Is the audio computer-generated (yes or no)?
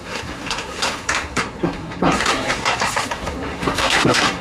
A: yes